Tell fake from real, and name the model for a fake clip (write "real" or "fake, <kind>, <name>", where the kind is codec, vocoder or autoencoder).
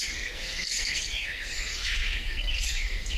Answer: fake, codec, SNAC